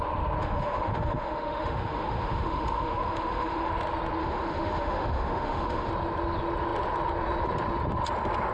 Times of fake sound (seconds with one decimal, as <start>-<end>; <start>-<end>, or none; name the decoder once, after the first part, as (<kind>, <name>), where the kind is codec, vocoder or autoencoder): 0.4-3.7 (autoencoder, DAC-VAE); 4.2-5.9